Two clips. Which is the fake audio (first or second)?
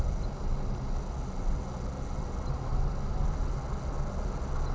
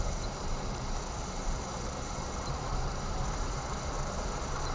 second